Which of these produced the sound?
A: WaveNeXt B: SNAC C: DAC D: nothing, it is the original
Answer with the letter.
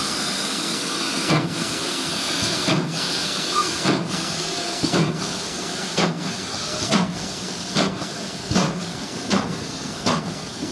B